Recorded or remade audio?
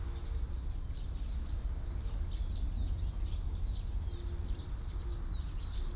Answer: recorded